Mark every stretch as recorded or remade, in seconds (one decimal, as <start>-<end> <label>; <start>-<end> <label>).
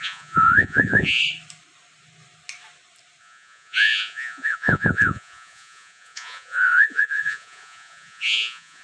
0.0-1.2 remade; 1.2-3.2 recorded; 3.2-8.8 remade